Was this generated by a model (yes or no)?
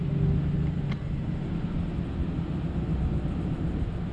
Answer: no